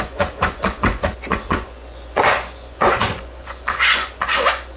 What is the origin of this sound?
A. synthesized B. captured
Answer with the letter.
A